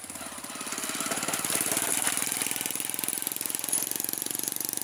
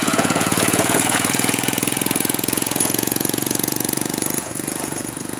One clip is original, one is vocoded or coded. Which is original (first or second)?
first